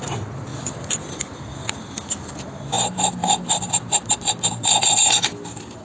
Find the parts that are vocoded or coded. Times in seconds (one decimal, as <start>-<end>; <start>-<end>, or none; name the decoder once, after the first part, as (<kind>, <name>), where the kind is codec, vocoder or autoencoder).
none